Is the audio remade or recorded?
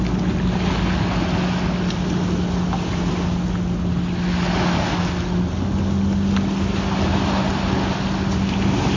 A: recorded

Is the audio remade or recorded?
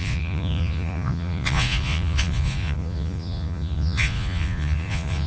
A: remade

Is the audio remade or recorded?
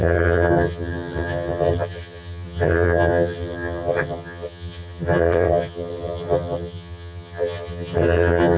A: remade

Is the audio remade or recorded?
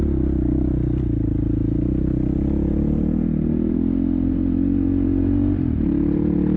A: recorded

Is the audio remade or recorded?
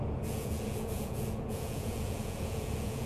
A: remade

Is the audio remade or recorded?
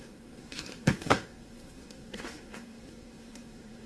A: remade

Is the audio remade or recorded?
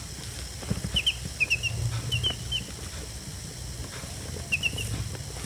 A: recorded